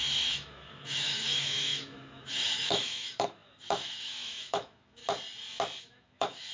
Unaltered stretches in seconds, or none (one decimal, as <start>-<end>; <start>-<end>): 5.0-5.8